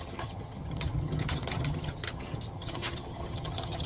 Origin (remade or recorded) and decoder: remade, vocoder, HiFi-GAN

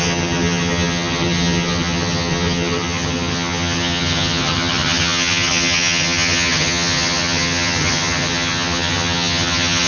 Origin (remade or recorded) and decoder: remade, vocoder, HiFi-GAN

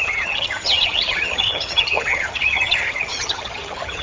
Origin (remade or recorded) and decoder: remade, vocoder, HiFi-GAN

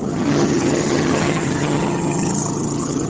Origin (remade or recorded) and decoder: remade, vocoder, HiFi-GAN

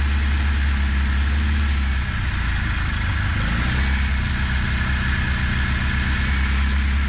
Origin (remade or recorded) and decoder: recorded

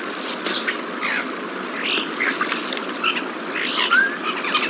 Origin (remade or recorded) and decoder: recorded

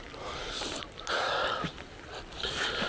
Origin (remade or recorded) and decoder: recorded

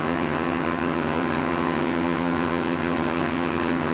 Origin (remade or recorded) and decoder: remade, vocoder, HiFi-GAN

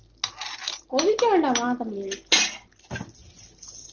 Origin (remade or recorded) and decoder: recorded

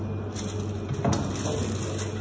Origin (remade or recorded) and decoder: recorded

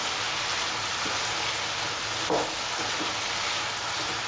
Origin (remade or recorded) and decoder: recorded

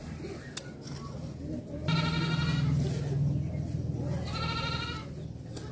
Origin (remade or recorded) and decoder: recorded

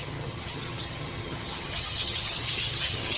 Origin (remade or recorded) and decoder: remade, vocoder, HiFi-GAN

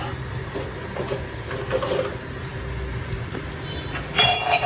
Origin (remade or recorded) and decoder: recorded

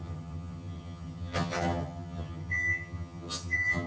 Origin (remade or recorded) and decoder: remade, vocoder, HiFi-GAN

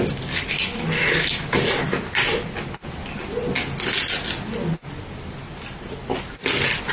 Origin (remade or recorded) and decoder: recorded